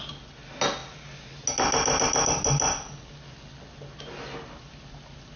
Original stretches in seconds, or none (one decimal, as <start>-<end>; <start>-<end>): 0.0-5.4